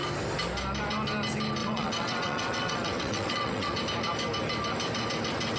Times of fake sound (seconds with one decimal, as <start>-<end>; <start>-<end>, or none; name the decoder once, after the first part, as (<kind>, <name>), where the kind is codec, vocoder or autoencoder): 1.6-3.8 (vocoder, WaveNeXt)